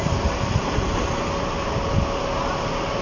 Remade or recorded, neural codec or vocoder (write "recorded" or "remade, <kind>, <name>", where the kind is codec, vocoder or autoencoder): recorded